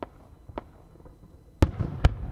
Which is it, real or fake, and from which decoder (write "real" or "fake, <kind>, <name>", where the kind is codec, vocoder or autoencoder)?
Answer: real